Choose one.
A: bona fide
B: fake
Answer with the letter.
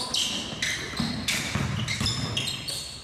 A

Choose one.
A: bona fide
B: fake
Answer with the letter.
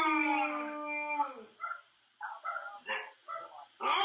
A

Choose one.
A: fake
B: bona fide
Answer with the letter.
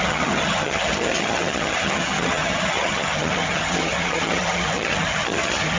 A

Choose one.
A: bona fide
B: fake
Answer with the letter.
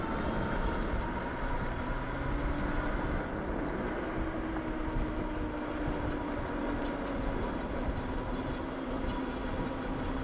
A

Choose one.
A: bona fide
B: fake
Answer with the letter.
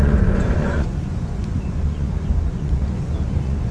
B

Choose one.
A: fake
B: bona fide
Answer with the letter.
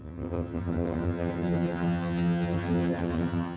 A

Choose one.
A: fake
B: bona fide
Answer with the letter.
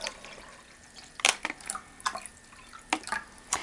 B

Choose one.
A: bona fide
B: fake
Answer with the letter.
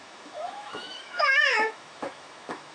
B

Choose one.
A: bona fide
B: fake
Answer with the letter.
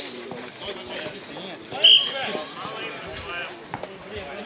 A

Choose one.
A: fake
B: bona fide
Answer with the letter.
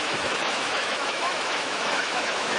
A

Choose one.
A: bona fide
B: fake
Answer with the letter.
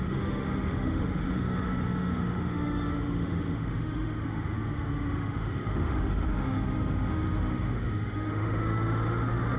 B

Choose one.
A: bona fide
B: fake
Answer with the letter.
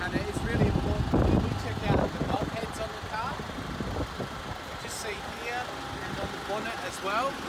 A